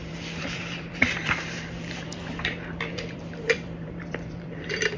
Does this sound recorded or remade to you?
remade